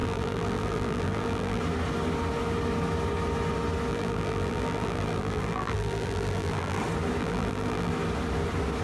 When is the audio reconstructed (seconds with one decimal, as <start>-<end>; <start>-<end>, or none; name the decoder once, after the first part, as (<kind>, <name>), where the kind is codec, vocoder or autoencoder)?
0.0-1.6 (vocoder, BigVGAN v2); 3.9-6.8; 7.2-7.9